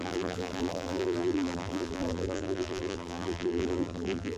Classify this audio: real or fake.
fake